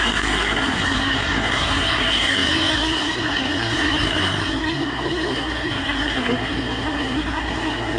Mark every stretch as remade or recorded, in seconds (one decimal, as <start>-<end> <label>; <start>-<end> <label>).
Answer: 0.0-8.0 remade